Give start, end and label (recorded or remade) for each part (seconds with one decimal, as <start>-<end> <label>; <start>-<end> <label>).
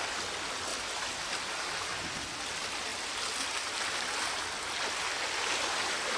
0.0-6.2 recorded